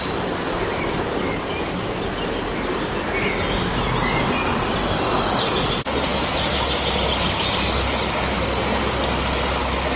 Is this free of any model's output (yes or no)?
yes